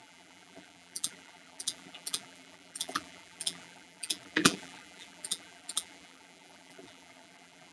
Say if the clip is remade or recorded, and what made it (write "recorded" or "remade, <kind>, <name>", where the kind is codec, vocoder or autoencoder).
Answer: remade, vocoder, BigVGAN v2